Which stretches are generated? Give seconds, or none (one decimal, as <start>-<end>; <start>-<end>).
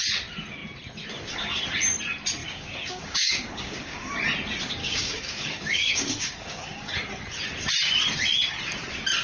2.4-4.2; 4.8-6.9